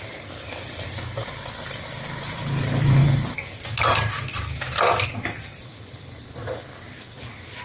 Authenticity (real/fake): fake